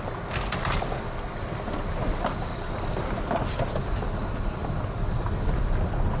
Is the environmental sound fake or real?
real